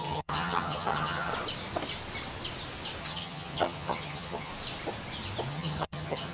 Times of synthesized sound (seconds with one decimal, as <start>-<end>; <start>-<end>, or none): 0.0-1.3; 3.0-4.5; 5.5-6.3